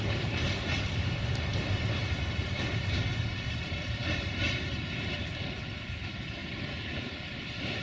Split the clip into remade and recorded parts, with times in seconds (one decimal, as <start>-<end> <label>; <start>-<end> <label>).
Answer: 0.0-6.4 remade; 6.4-7.8 recorded